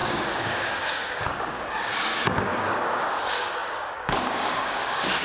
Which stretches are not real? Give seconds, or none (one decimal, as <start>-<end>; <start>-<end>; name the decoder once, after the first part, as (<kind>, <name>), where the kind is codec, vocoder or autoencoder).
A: 0.0-5.2 (codec, DAC)